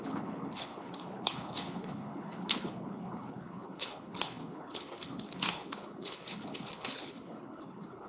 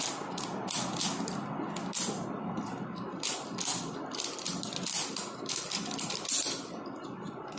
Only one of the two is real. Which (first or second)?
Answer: second